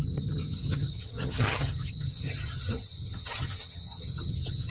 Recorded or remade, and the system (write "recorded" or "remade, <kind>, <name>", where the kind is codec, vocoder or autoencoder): remade, vocoder, HiFi-GAN